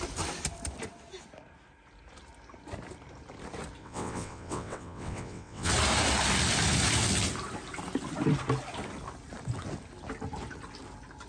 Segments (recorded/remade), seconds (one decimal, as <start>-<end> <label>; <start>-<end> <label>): 0.0-3.8 recorded; 3.8-5.7 remade; 5.7-11.3 recorded